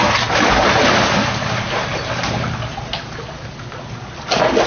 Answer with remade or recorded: recorded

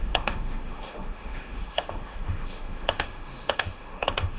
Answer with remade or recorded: remade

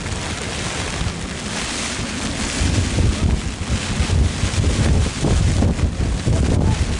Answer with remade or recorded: recorded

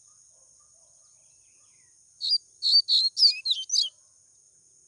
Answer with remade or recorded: recorded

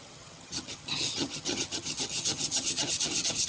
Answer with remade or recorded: remade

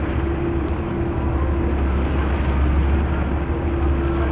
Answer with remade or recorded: recorded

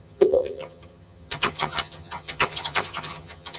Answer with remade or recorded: remade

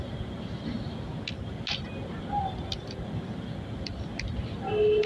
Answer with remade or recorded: recorded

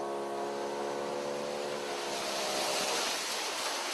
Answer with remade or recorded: recorded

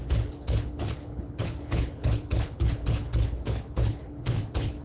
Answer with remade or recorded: remade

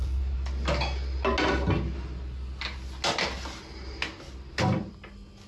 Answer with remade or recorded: recorded